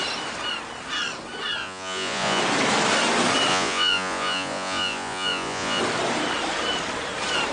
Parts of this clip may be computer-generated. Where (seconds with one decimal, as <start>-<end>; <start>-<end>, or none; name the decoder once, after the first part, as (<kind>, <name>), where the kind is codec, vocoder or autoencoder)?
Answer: 1.6-2.4 (vocoder, Vocos); 3.5-5.8